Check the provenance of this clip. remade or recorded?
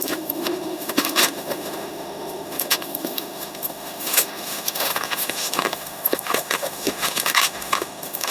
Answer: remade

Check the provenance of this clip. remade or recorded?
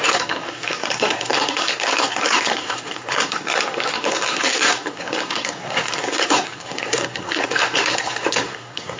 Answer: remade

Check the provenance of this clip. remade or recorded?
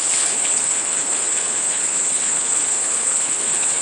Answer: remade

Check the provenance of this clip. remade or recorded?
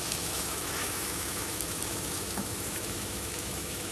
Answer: remade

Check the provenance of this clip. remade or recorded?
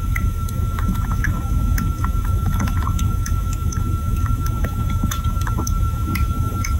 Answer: remade